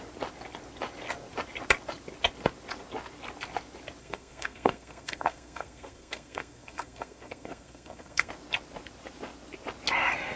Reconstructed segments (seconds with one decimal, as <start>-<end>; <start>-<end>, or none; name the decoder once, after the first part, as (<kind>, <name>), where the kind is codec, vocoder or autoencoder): 4.0-8.3 (codec, SNAC)